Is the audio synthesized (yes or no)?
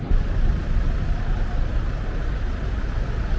no